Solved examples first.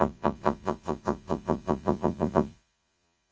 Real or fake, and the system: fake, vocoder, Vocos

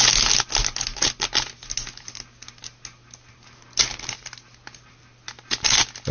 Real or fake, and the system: real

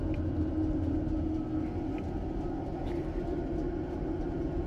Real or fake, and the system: real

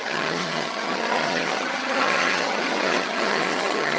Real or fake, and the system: fake, vocoder, HiFi-GAN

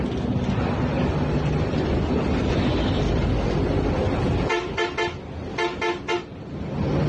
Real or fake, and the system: real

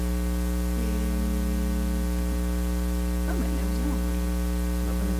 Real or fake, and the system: real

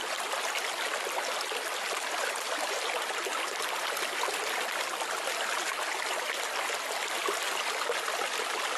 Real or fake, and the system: real